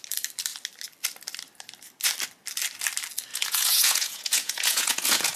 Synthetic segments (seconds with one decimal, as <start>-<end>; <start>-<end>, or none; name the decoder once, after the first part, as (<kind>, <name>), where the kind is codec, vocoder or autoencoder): 3.3-5.4 (vocoder, Vocos)

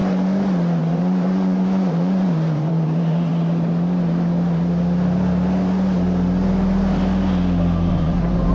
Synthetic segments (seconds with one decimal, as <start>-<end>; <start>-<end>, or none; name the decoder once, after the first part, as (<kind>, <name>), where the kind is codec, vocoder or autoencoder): 0.8-3.3 (vocoder, Vocos); 7.9-8.5

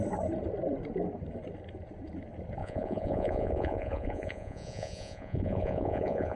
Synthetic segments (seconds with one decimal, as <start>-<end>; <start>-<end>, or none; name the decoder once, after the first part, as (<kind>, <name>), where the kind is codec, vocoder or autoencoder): 2.6-6.4 (vocoder, Vocos)

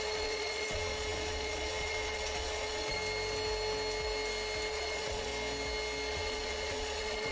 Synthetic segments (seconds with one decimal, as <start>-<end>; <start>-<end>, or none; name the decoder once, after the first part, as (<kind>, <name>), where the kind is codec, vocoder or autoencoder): 0.0-3.0 (vocoder, Vocos); 4.7-5.3; 6.1-7.3

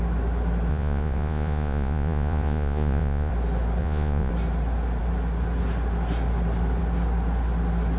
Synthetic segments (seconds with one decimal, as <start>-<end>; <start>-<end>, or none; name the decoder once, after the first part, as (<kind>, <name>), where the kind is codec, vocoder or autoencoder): 0.7-3.3 (vocoder, Vocos); 3.8-4.3

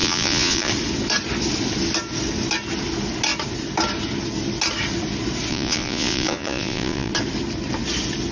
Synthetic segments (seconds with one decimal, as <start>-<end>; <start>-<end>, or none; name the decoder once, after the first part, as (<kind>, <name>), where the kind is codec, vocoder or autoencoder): 0.0-0.7 (vocoder, Vocos); 5.5-7.1

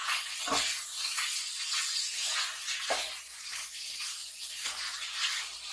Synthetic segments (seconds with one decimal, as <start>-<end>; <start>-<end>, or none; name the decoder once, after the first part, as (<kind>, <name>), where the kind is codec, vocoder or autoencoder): 0.0-3.4 (vocoder, Vocos); 4.2-5.0

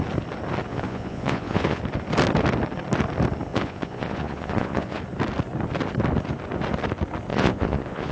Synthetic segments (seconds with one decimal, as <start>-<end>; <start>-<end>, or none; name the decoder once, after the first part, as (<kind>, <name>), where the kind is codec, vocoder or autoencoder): 0.7-1.8 (vocoder, Vocos); 3.5-5.0; 7.3-8.1